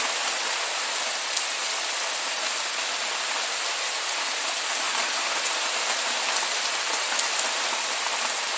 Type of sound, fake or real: real